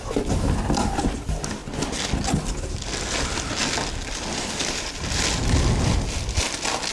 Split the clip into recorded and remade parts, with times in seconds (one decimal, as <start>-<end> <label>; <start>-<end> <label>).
0.0-6.9 recorded